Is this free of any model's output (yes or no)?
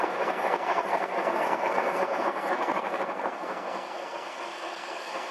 no